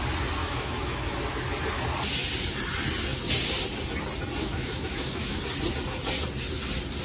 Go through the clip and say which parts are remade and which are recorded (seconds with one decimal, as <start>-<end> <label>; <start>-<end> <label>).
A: 0.0-0.4 recorded; 0.4-1.1 remade; 1.1-4.4 recorded; 4.4-5.4 remade; 5.4-7.0 recorded